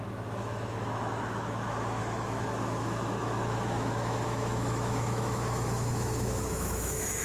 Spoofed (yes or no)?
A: yes